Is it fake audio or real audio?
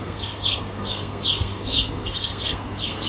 fake